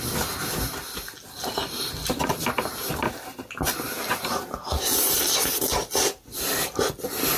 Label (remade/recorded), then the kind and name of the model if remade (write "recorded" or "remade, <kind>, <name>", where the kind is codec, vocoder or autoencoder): recorded